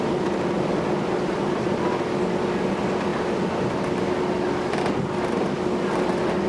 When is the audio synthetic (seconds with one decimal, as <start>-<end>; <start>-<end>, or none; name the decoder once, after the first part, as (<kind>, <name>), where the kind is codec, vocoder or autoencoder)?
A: none